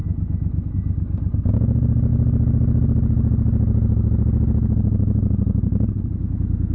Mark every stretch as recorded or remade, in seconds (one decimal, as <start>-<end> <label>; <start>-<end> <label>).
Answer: 0.0-6.7 recorded